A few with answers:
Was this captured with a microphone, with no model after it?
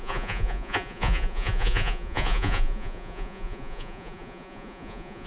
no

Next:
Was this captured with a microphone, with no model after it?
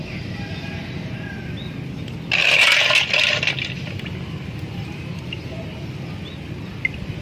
yes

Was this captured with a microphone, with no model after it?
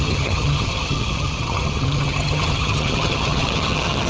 no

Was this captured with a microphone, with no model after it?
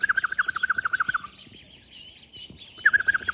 yes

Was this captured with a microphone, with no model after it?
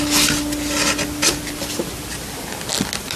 yes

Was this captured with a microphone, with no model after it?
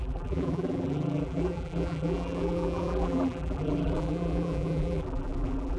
no